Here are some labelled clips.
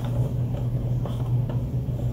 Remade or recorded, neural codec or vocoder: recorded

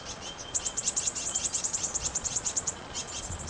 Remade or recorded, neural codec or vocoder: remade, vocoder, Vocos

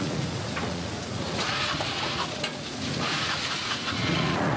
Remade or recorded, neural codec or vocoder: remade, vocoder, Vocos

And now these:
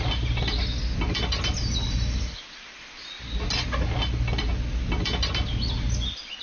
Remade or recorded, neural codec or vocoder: recorded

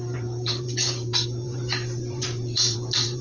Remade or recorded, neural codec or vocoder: remade, vocoder, BigVGAN v2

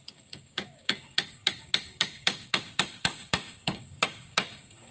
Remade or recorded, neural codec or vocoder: remade, codec, DAC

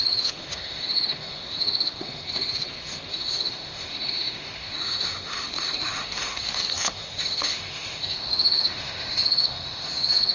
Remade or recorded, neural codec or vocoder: remade, autoencoder, DAC-VAE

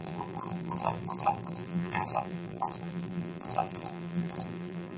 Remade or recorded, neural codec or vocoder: remade, vocoder, BigVGAN v2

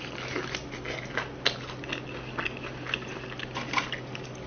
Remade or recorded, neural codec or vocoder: recorded